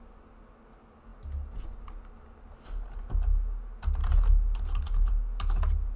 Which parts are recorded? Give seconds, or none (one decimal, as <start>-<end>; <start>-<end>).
0.0-6.0